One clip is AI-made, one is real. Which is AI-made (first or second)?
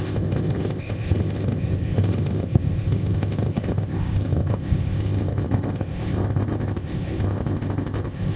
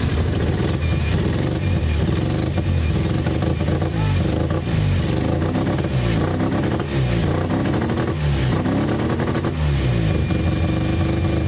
first